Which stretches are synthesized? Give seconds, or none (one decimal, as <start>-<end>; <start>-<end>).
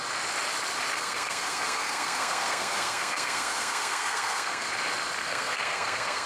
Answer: 0.9-4.7; 5.2-6.3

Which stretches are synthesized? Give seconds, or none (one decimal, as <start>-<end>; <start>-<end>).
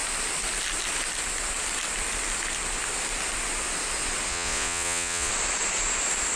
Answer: 4.3-5.3